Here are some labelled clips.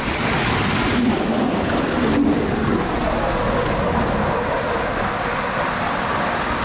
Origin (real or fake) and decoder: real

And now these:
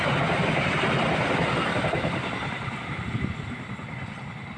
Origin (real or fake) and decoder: real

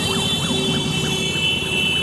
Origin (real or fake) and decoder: real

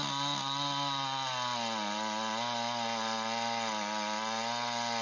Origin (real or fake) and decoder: real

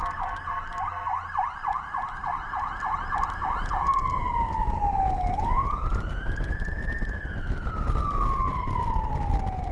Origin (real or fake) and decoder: real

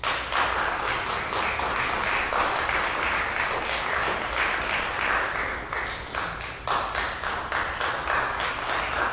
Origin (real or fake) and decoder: real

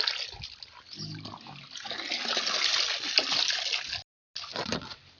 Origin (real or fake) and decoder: real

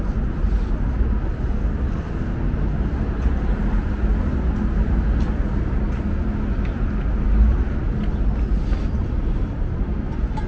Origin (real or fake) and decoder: real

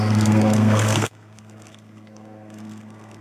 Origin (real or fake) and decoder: fake, codec, SNAC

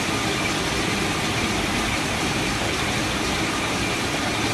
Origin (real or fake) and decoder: real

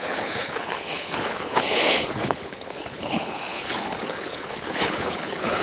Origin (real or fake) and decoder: fake, codec, HILCodec